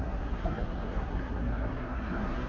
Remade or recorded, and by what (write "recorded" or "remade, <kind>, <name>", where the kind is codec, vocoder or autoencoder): remade, codec, SNAC